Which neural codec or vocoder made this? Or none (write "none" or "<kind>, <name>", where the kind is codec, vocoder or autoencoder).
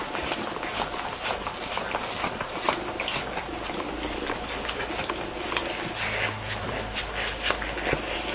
none